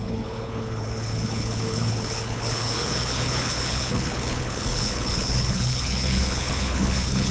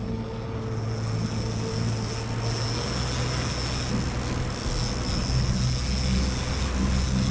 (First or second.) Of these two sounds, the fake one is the first